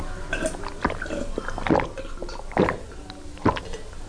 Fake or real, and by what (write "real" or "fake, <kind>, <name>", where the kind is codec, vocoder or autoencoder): real